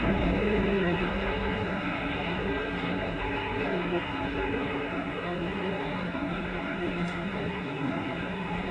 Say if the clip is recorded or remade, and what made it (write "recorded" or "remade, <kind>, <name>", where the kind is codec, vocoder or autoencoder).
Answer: remade, codec, SNAC